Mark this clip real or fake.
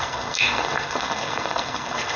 fake